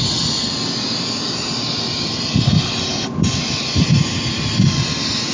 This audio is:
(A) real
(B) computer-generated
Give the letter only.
A